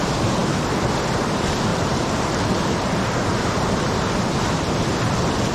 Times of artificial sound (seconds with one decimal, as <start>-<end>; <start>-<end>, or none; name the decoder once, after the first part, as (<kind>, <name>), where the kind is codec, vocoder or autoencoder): 1.7-5.0 (vocoder, BigVGAN v2)